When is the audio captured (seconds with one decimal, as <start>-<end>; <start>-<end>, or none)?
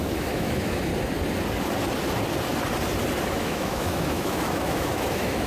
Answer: 0.9-3.3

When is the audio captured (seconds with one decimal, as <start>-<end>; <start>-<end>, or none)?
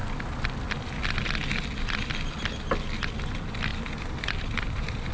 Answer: 0.0-3.7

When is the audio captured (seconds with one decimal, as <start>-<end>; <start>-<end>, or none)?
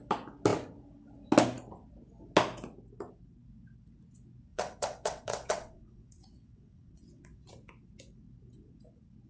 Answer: 0.0-4.5; 7.5-9.3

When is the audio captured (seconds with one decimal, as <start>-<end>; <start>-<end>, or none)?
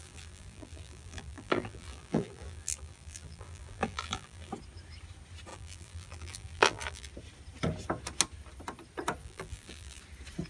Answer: 4.5-5.5; 7.1-9.2; 10.0-10.5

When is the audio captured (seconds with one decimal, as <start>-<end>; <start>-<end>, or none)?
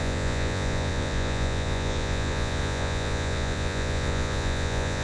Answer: none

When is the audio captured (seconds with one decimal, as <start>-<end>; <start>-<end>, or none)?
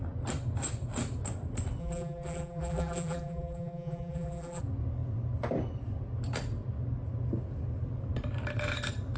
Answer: 0.0-1.8; 4.6-9.2